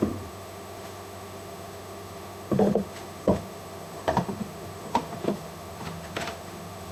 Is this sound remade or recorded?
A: remade